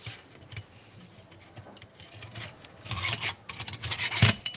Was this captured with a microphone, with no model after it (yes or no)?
yes